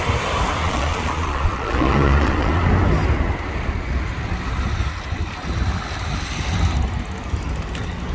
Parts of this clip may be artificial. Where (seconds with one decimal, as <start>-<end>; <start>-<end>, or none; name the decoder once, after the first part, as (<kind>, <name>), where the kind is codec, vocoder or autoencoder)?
0.6-2.7 (vocoder, Vocos)